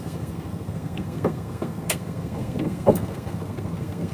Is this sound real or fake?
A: fake